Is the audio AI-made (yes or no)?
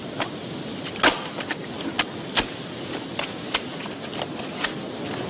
no